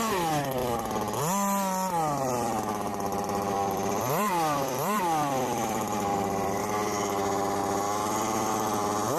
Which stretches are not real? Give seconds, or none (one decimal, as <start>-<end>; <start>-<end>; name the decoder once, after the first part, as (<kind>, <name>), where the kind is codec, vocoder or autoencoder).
2.9-6.6 (vocoder, BigVGAN v2)